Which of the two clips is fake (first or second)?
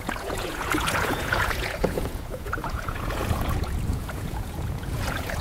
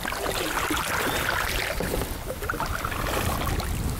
first